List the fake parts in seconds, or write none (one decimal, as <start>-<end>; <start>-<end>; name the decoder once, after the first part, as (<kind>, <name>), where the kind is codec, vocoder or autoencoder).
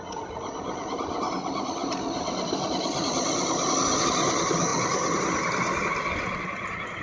none